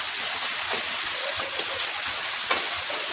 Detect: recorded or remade remade